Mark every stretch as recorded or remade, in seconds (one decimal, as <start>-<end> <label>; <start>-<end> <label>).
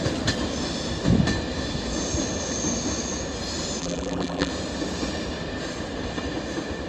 0.0-3.8 recorded; 3.8-4.5 remade; 4.5-6.9 recorded